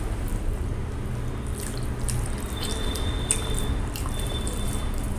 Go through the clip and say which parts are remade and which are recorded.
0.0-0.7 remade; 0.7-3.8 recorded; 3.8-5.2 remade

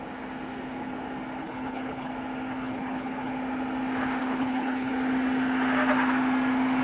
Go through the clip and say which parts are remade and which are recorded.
0.0-1.4 recorded; 1.4-2.1 remade; 2.1-2.5 recorded; 2.5-3.3 remade; 3.3-4.2 recorded; 4.2-4.9 remade; 4.9-6.8 recorded

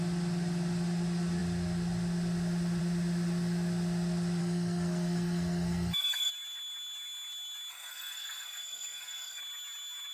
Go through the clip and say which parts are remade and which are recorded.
0.0-4.4 recorded; 4.4-6.3 remade; 6.3-7.7 recorded; 7.7-9.4 remade; 9.4-10.1 recorded

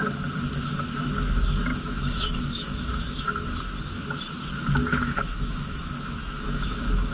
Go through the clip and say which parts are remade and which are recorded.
0.0-1.7 recorded; 1.7-3.2 remade; 3.2-4.8 recorded; 4.8-5.8 remade; 5.8-6.2 recorded; 6.2-7.1 remade

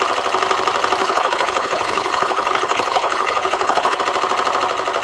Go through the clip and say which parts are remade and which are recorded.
0.0-1.0 recorded; 1.0-4.0 remade; 4.0-5.0 recorded

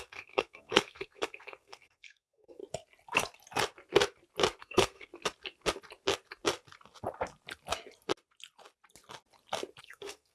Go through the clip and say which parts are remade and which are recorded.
0.0-2.6 remade; 2.6-4.6 recorded; 4.6-5.1 remade; 5.1-9.8 recorded; 9.8-10.3 remade